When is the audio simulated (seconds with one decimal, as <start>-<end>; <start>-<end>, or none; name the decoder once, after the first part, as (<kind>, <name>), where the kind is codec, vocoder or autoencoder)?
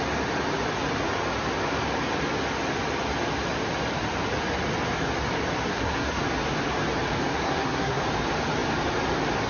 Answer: 5.7-6.2 (codec, SNAC); 7.3-8.0